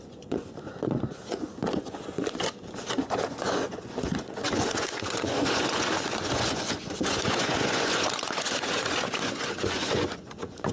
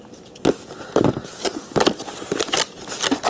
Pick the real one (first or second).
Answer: second